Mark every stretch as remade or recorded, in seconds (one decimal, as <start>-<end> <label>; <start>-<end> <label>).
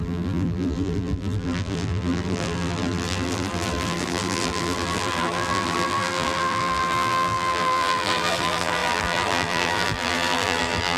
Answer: 0.0-11.0 remade